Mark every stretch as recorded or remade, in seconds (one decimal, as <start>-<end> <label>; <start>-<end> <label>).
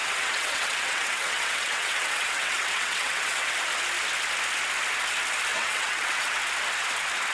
0.0-3.6 remade; 3.6-5.5 recorded; 5.5-6.4 remade; 6.4-7.3 recorded